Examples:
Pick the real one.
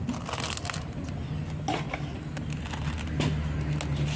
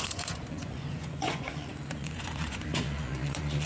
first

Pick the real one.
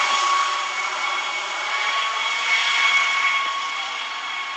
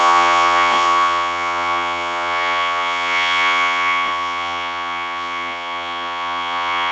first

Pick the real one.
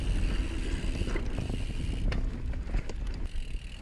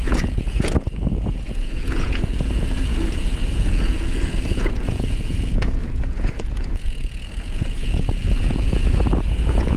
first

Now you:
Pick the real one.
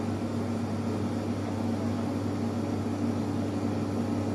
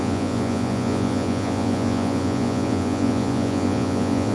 first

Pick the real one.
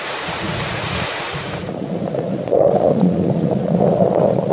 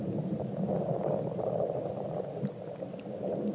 second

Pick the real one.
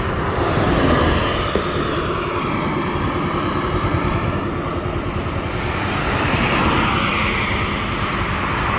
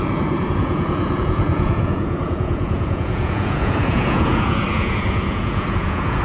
first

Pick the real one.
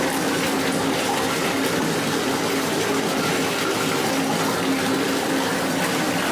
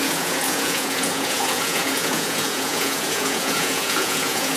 first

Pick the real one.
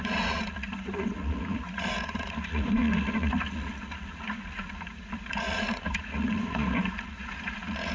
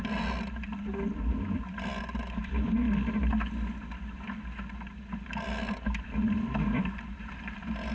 second